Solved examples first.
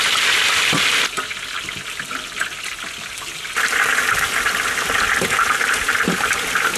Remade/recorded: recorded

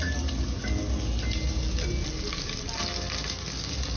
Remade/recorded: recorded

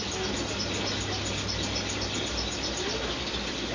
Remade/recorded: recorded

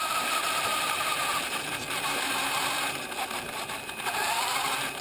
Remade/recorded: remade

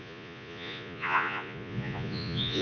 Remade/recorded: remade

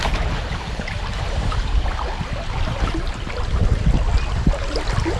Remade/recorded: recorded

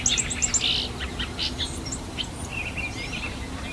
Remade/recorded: recorded